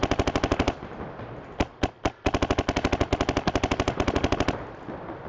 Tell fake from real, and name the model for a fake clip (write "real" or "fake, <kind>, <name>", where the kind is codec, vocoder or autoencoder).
real